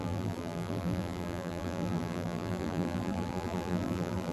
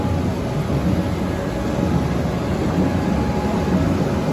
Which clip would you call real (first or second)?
second